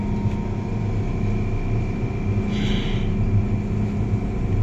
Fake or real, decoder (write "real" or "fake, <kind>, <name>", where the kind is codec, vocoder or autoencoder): real